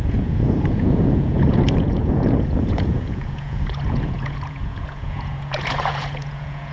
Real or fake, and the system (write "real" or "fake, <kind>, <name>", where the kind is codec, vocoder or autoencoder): fake, vocoder, Vocos